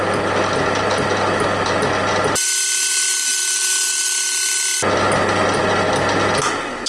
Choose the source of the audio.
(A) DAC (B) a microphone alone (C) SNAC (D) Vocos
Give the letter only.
B